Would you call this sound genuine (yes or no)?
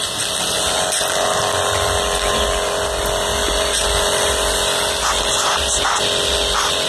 yes